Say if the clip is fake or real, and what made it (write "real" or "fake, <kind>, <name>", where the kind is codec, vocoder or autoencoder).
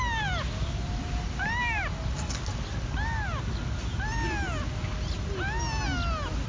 real